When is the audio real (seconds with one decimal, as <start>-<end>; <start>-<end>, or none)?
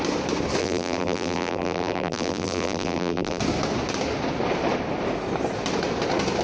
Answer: 0.0-0.6; 3.4-6.4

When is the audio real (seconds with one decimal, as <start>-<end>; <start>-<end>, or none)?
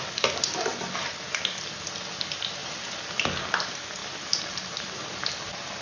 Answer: 0.0-2.6; 3.4-4.0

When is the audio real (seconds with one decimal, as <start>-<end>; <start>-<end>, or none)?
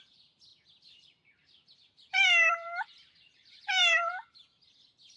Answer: none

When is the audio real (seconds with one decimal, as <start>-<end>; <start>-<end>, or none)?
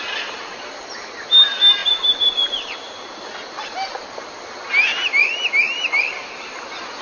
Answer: 0.0-5.2; 6.1-7.0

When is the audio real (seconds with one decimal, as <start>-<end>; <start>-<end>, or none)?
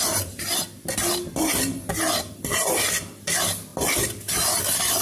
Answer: 0.0-5.0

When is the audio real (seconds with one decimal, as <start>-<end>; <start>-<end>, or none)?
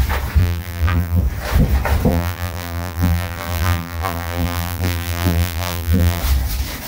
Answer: 0.0-0.4; 1.2-2.1; 6.2-6.9